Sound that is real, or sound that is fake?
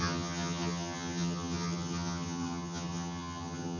fake